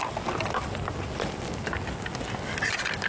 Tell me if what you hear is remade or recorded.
recorded